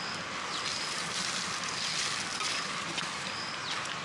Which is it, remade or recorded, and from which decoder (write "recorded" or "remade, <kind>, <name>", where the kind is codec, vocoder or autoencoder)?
recorded